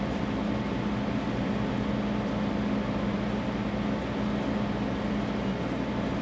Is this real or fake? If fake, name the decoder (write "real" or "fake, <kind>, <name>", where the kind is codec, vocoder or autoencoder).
real